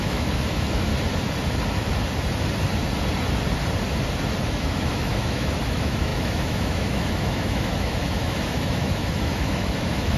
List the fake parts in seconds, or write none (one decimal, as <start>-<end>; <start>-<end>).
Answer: 0.0-0.9; 4.4-10.2